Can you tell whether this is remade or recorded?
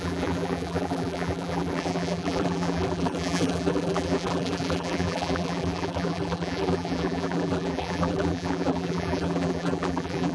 remade